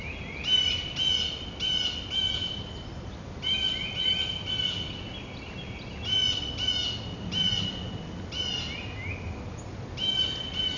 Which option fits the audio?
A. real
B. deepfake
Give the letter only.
A